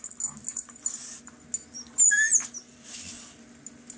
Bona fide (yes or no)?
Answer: yes